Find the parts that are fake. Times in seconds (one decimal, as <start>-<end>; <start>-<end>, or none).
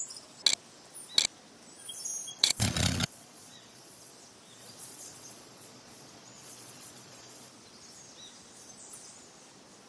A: 2.3-4.1; 4.6-7.5